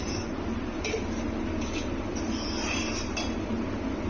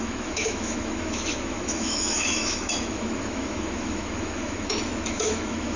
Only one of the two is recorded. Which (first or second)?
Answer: first